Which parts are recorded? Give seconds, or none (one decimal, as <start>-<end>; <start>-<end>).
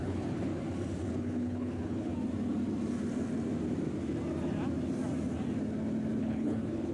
0.5-1.1; 2.1-6.2